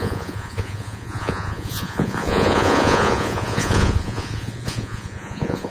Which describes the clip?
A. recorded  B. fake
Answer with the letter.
B